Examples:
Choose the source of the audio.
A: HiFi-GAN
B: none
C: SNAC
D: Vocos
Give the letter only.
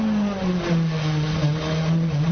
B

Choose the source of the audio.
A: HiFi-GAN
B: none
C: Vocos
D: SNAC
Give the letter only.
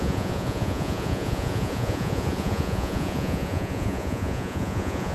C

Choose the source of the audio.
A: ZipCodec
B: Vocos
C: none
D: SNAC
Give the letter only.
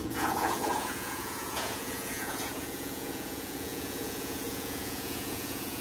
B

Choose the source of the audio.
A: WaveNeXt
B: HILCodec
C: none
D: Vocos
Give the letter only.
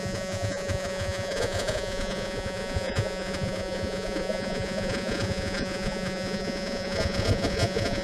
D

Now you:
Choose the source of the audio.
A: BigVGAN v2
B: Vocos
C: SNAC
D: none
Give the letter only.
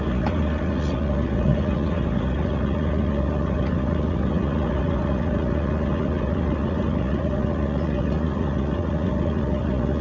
B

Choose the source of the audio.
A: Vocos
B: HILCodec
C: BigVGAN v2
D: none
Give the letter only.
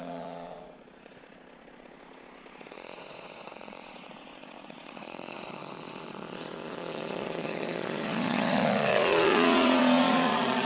A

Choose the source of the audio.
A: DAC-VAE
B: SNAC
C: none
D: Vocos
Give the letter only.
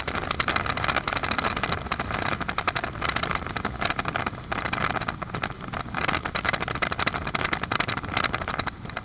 C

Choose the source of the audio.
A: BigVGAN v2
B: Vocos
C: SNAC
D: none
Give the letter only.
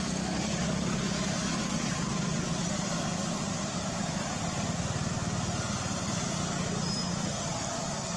D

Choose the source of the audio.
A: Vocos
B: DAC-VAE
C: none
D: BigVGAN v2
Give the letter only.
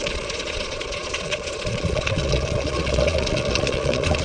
A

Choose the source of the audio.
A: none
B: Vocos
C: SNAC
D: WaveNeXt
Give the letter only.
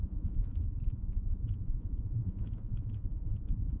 B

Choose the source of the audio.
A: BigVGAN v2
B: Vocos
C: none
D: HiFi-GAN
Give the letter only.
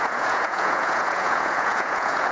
B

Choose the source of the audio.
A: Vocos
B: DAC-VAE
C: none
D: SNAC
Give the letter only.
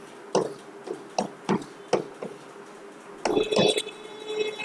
C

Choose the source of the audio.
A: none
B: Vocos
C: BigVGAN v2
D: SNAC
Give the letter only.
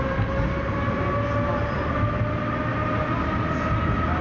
A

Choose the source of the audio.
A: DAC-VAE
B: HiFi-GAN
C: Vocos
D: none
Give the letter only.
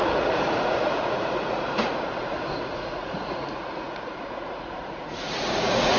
C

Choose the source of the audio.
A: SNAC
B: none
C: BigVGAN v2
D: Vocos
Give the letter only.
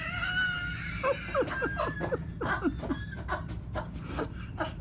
B